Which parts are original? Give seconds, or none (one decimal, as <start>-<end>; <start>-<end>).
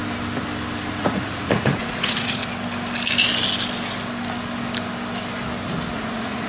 0.0-1.0; 2.4-5.9